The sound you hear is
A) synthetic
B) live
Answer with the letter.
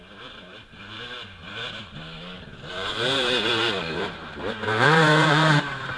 A